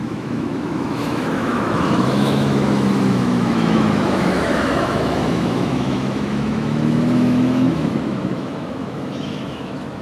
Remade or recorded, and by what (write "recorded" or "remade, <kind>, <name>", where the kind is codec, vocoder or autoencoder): remade, autoencoder, DAC-VAE